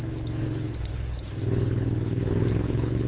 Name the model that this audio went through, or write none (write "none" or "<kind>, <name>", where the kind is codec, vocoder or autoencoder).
codec, HILCodec